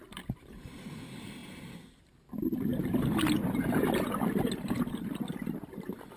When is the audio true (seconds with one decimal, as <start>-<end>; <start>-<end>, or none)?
1.4-2.0; 2.7-4.8